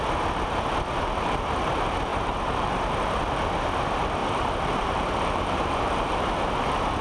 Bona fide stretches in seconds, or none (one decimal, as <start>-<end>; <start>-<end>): 0.0-2.1; 3.2-4.2; 6.5-7.0